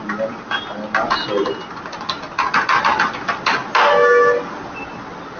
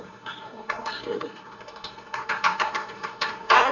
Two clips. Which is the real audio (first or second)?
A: first